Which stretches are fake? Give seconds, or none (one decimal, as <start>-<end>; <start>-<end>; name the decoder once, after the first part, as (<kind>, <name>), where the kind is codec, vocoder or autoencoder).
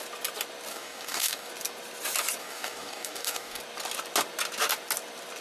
0.7-1.5 (codec, DAC); 2.4-3.6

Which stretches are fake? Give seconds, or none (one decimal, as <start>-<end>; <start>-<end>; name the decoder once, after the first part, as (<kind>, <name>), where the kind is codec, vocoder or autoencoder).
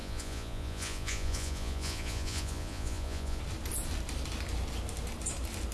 0.0-3.4 (vocoder, Vocos)